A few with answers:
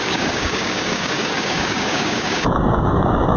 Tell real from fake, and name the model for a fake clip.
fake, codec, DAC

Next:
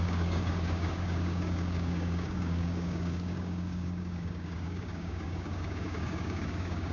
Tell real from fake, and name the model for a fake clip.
fake, codec, DAC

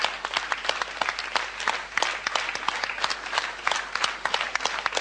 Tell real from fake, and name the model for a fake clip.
real